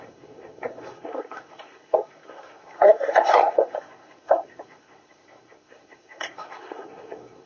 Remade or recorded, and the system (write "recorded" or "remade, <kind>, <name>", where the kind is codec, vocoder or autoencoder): remade, codec, SNAC